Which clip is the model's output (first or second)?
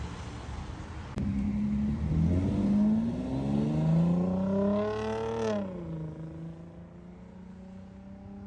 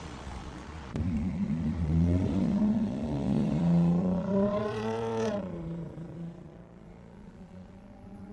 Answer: second